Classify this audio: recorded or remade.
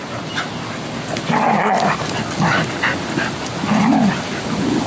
recorded